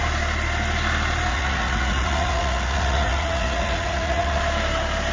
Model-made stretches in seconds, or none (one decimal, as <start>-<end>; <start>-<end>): 1.3-4.4